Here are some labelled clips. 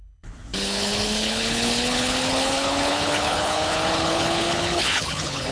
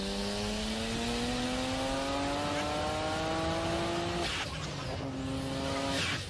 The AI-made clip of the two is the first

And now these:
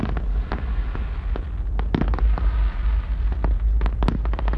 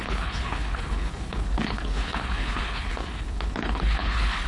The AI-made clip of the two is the second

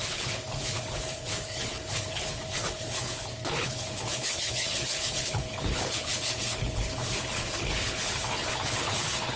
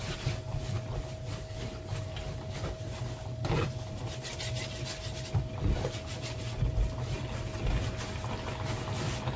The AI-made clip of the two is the first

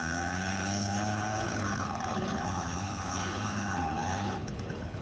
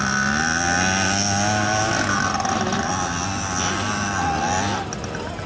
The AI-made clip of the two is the first